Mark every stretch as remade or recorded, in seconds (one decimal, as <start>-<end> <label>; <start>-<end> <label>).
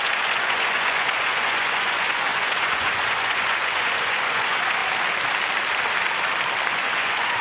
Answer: 0.0-4.8 remade; 4.8-6.7 recorded; 6.7-7.4 remade